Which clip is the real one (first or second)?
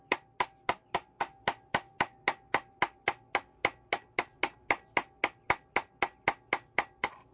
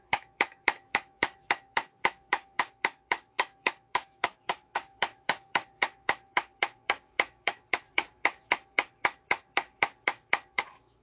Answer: first